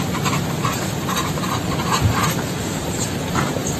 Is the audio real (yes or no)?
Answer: no